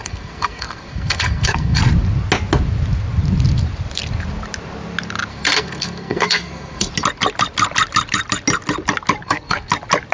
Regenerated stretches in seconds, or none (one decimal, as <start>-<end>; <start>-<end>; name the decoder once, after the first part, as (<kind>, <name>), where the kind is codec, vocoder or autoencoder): 0.0-1.8 (codec, SNAC); 5.3-6.9; 9.2-9.7